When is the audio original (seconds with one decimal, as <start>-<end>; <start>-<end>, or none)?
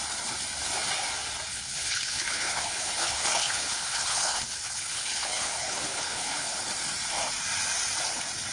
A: 0.0-1.5; 6.6-8.5